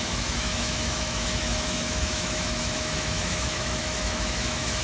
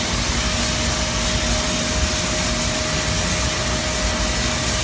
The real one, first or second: second